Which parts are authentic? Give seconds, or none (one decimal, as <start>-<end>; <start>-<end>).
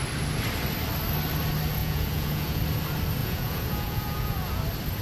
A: 0.0-1.8; 2.6-3.2; 4.6-5.0